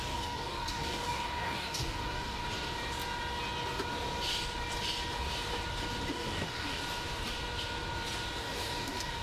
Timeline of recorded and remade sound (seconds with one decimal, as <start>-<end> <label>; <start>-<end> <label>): 0.0-2.4 remade; 2.4-6.1 recorded; 6.1-6.8 remade; 6.8-8.4 recorded; 8.4-9.2 remade

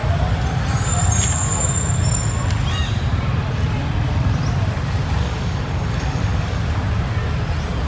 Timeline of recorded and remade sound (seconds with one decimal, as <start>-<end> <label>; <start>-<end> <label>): 0.0-5.2 recorded; 5.2-6.6 remade; 6.6-7.9 recorded

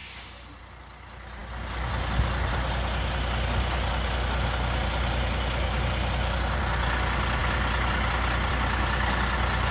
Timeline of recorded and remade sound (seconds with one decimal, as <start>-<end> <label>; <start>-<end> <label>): 0.0-9.7 recorded

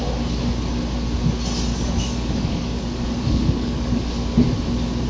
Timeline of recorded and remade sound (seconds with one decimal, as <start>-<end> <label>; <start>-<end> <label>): 0.0-1.7 recorded; 1.7-4.1 remade; 4.1-5.1 recorded

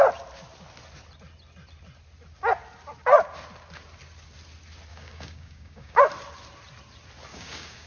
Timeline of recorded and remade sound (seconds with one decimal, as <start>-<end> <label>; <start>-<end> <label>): 0.0-4.9 recorded; 4.9-6.0 remade; 6.0-7.3 recorded; 7.3-7.9 remade

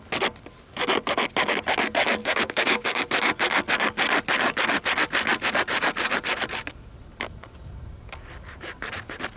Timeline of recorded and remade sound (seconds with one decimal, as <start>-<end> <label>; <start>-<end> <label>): 0.0-2.2 recorded; 2.2-3.0 remade; 3.0-9.4 recorded